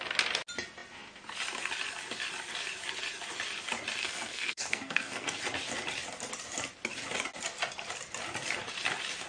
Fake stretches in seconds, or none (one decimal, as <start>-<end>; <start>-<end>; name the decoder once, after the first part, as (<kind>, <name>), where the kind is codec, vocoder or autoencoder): 4.0-5.4 (codec, SNAC)